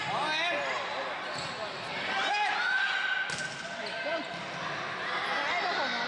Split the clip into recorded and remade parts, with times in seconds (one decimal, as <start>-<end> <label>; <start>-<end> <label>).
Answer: 0.0-6.1 recorded